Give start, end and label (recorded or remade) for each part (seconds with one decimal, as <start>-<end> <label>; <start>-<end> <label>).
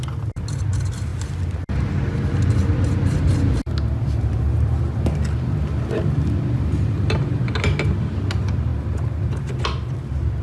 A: 0.0-10.4 recorded